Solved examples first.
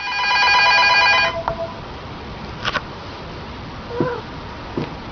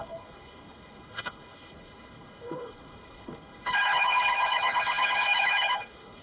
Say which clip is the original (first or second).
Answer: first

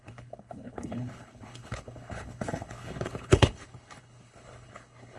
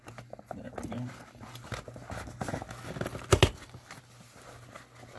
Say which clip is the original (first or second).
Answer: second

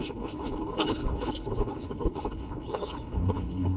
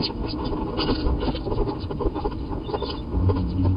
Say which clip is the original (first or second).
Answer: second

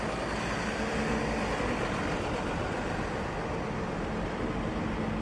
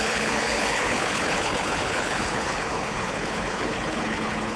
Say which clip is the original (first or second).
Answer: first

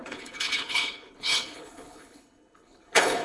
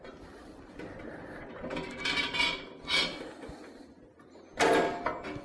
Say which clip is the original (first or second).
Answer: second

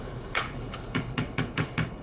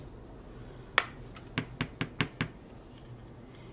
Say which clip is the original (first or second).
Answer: second